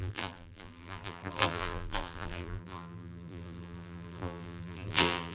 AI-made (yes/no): yes